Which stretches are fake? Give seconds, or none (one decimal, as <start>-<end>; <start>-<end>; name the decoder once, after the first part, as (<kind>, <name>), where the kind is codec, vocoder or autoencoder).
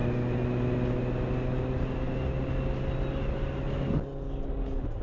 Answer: none